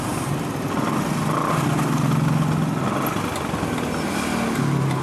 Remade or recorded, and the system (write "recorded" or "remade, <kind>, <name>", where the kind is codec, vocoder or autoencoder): recorded